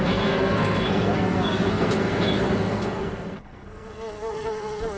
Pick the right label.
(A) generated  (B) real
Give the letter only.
A